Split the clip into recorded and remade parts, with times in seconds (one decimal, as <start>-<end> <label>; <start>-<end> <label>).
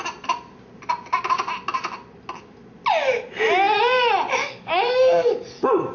0.0-4.4 recorded; 4.4-5.9 remade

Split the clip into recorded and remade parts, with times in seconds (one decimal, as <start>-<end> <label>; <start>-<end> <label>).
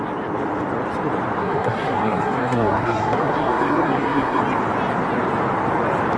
0.0-1.4 recorded; 1.4-4.4 remade; 4.4-6.2 recorded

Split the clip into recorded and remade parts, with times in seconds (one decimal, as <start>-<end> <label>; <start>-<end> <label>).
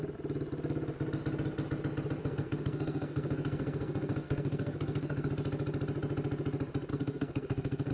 0.0-2.2 recorded; 2.2-5.3 remade; 5.3-6.9 recorded; 6.9-7.9 remade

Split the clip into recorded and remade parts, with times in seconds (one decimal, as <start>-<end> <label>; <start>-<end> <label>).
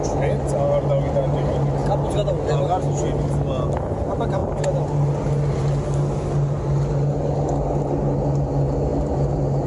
0.0-9.7 recorded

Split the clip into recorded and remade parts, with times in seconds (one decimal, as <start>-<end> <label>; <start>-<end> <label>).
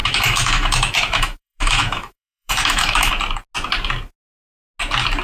0.0-3.1 remade; 3.1-5.2 recorded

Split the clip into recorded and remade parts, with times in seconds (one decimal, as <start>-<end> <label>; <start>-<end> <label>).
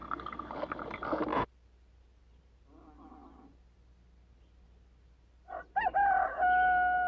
0.0-0.5 remade; 0.5-7.1 recorded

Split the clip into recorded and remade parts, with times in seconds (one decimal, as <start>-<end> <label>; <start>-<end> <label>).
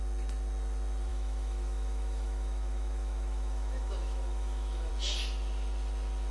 0.0-1.1 recorded; 1.1-4.9 remade; 4.9-6.3 recorded